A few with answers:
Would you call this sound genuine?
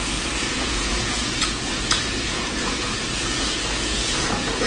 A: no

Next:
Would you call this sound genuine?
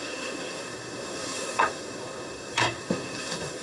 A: no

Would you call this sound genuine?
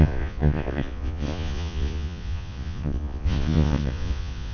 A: no